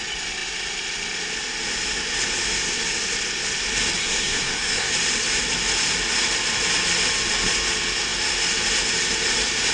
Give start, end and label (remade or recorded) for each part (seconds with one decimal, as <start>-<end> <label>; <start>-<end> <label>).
0.0-4.0 recorded; 4.0-4.9 remade; 4.9-9.7 recorded